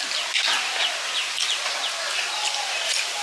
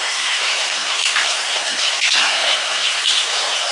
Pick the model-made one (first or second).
second